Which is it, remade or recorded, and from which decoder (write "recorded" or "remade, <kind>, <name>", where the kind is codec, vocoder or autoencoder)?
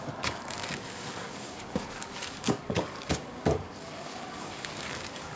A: remade, codec, DAC